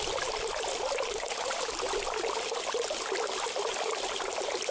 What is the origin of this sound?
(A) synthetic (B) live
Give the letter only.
B